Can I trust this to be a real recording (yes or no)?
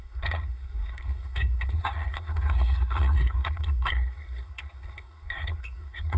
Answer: no